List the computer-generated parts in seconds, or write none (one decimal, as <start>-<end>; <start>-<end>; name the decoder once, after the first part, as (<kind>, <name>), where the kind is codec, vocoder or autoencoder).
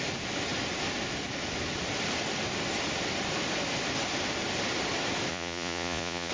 5.3-6.3 (vocoder, Vocos)